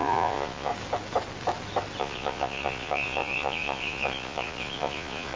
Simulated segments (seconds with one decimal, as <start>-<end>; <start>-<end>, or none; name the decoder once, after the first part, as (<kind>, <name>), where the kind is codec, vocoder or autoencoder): 0.0-0.7 (vocoder, Vocos); 2.0-5.4